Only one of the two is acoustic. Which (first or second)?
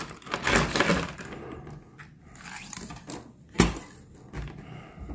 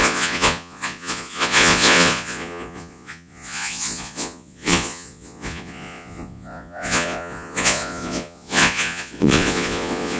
first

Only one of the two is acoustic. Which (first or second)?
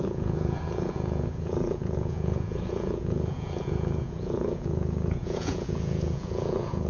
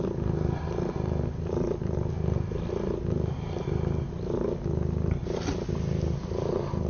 second